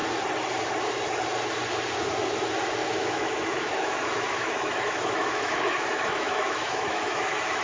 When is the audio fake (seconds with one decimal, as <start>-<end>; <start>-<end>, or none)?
2.8-7.6